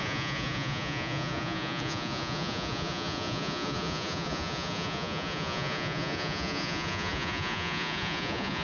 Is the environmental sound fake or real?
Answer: fake